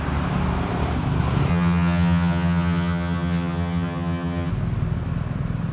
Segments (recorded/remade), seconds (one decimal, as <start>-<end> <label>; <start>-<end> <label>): 0.0-1.5 recorded; 1.5-4.5 remade; 4.5-5.7 recorded